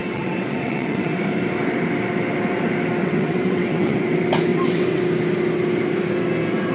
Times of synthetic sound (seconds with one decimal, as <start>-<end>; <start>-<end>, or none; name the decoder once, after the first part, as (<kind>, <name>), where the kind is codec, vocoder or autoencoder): 0.0-1.2 (vocoder, WaveNeXt); 3.0-4.0; 4.5-5.0